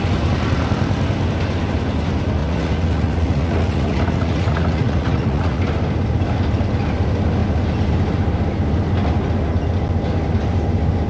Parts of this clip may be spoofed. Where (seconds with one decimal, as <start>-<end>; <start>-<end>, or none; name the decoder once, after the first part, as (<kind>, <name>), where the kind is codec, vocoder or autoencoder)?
2.4-5.6 (vocoder, Vocos)

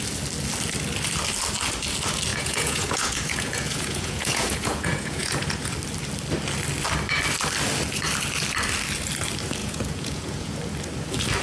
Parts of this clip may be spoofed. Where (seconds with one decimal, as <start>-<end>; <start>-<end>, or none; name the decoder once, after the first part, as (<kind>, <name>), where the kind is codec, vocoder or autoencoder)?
2.3-5.7 (vocoder, Vocos); 9.6-10.6

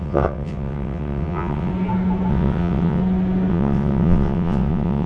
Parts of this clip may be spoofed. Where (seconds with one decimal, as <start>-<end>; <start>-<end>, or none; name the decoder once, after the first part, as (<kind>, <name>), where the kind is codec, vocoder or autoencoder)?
0.0-1.7 (vocoder, WaveNeXt); 2.3-3.0; 3.5-5.1

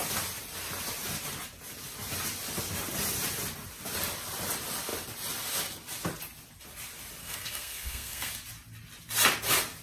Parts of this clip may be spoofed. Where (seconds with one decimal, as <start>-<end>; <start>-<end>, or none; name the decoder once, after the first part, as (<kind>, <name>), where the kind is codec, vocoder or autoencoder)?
7.2-8.3 (codec, SNAC)